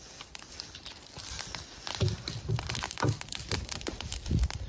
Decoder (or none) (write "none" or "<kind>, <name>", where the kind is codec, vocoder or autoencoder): vocoder, BigVGAN v2